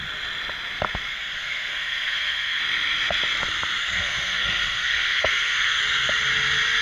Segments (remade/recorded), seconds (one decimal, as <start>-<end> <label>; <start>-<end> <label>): 0.0-1.1 recorded; 1.1-2.6 remade; 2.6-3.8 recorded; 3.8-5.8 remade; 5.8-6.8 recorded